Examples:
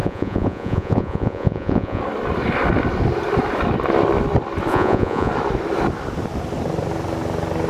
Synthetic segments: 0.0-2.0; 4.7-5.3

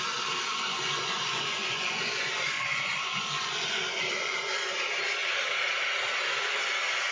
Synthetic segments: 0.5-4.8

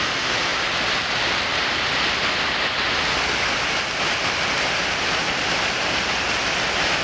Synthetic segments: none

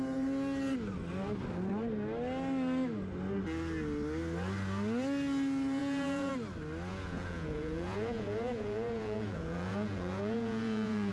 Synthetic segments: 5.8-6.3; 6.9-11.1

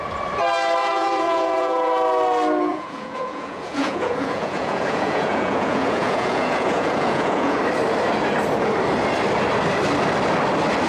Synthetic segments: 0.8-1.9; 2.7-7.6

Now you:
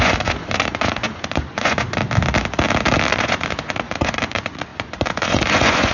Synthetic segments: 0.0-2.0; 3.1-5.9

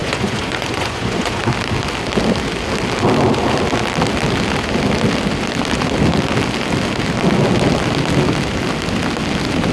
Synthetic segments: 0.0-1.4